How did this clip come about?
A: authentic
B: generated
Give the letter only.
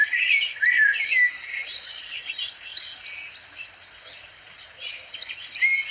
A